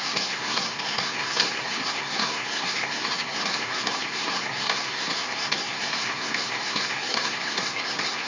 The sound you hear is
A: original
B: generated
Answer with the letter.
B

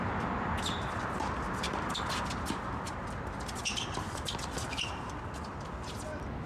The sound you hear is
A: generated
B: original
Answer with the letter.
B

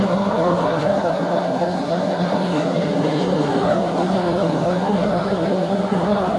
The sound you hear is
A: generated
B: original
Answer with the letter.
A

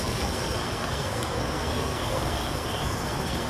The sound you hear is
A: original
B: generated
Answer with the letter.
B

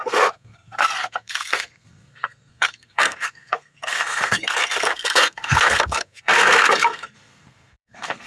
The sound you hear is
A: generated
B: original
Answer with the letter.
A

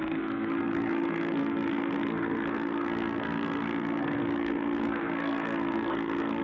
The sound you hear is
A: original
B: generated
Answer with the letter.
B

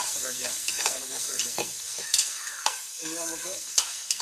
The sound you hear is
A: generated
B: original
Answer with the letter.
A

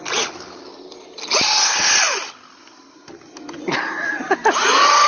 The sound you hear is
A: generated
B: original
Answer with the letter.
B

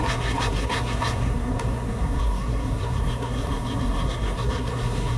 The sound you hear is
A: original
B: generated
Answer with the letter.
B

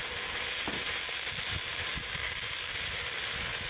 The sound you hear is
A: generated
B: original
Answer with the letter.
B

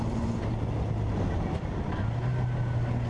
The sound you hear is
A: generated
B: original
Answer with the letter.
B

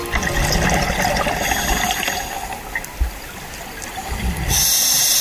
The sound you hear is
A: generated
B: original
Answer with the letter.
B